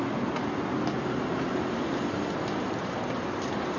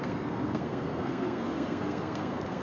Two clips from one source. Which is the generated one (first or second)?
second